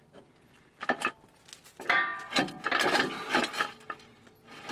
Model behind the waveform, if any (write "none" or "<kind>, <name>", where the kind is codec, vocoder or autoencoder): none